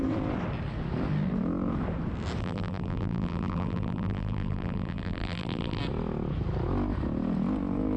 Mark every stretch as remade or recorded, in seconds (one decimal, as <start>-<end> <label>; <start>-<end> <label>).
0.0-2.4 recorded; 2.4-5.8 remade; 5.8-8.0 recorded